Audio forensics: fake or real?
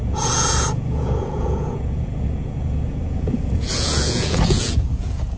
fake